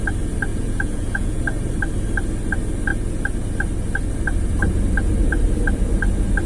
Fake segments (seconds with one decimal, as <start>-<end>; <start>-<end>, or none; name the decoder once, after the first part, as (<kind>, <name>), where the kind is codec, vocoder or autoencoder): 0.5-1.4 (vocoder, Vocos)